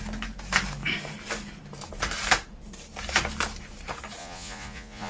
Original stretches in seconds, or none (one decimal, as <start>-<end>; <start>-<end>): 0.0-4.2